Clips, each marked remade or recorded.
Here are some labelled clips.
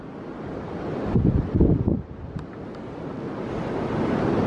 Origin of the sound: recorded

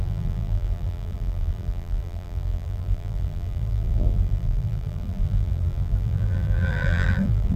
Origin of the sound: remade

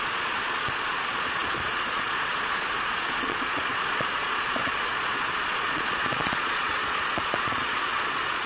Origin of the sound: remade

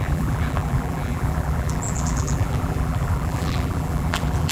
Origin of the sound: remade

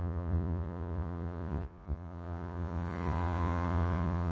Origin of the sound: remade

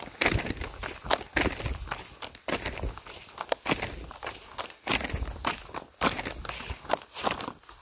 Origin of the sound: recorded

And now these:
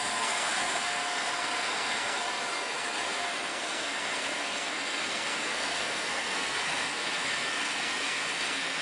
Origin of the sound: remade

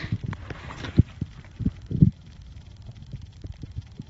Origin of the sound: remade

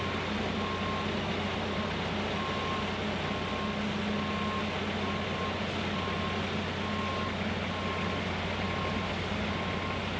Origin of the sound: recorded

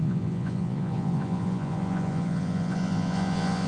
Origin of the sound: remade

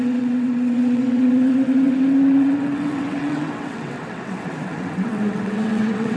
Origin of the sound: remade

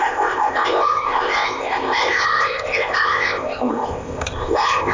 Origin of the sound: remade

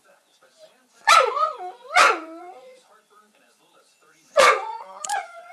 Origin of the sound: remade